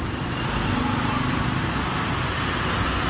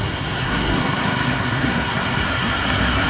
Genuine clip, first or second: first